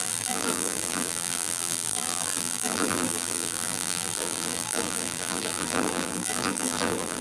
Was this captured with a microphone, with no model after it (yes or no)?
no